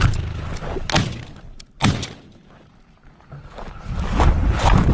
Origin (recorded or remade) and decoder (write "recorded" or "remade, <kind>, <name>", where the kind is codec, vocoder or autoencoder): recorded